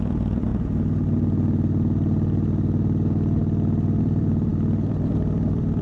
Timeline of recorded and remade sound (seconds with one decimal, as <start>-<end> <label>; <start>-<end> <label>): 0.0-0.5 remade; 0.5-4.0 recorded; 4.0-5.8 remade